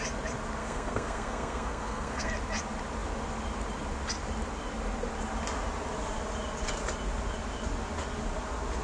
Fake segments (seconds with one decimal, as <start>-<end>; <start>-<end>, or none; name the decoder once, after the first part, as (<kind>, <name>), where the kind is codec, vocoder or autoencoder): 0.6-2.3 (codec, SNAC)